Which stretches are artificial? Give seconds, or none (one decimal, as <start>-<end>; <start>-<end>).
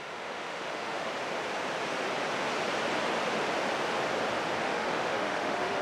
0.0-1.1; 4.6-5.8